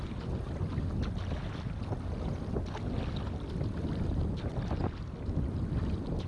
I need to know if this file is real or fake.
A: real